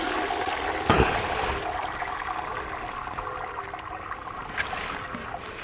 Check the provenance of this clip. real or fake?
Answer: real